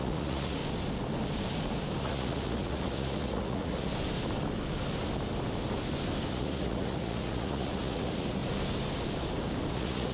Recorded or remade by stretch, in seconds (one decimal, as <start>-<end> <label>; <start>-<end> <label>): 0.0-0.6 remade; 0.6-2.0 recorded; 2.0-3.9 remade; 3.9-6.3 recorded; 6.3-8.4 remade; 8.4-9.7 recorded; 9.7-10.1 remade